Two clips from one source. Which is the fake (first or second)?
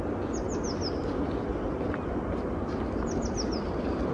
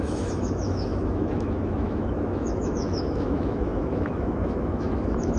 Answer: second